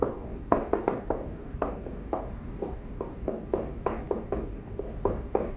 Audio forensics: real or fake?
fake